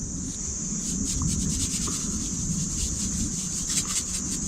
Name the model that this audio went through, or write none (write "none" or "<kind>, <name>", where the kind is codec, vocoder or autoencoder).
none